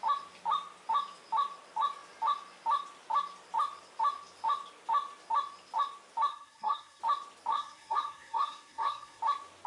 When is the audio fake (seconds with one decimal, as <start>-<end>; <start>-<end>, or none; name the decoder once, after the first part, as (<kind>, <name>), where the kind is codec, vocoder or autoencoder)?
6.3-7.0 (codec, SNAC); 7.5-9.2